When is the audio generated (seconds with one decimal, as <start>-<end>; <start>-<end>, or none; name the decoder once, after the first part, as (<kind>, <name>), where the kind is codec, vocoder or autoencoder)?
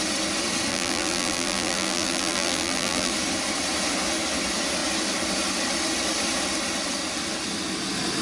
0.7-3.1 (vocoder, BigVGAN v2)